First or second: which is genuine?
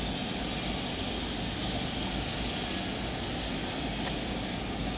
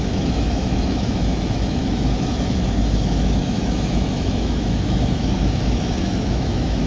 first